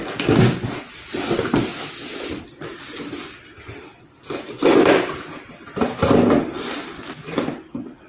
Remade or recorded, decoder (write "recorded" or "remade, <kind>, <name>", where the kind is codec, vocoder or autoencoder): recorded